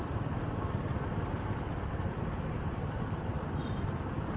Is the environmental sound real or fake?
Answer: real